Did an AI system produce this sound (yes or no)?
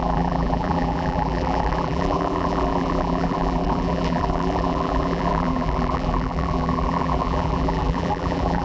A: yes